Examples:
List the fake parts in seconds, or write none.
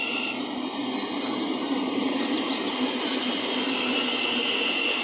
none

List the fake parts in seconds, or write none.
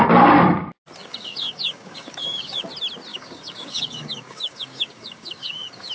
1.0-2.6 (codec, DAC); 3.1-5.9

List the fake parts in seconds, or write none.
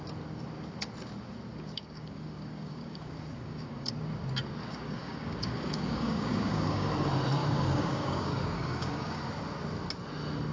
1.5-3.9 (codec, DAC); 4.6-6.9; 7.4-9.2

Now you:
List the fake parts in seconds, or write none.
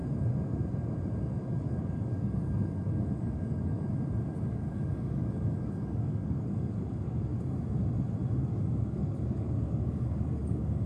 1.2-3.9 (codec, DAC); 4.5-7.3; 8.4-10.9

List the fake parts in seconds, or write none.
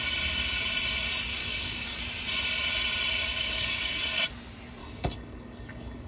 1.4-2.0 (codec, DAC); 3.3-4.0; 4.8-6.1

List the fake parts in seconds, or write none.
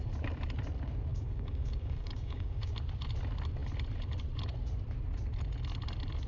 1.1-2.7 (codec, DAC)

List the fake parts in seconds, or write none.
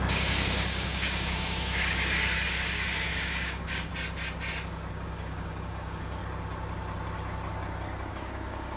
0.0-3.9 (codec, DAC); 4.9-6.2; 8.1-8.8